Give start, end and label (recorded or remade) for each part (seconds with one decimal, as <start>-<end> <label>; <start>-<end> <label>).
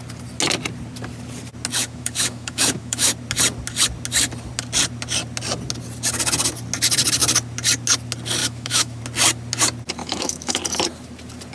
0.0-1.8 recorded; 1.8-3.1 remade; 3.1-8.4 recorded; 8.4-9.0 remade; 9.0-10.0 recorded; 10.0-10.6 remade; 10.6-11.5 recorded